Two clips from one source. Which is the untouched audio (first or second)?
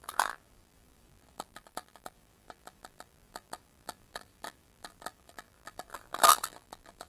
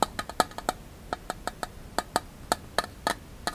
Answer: second